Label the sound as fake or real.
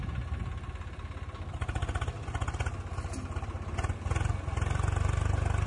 real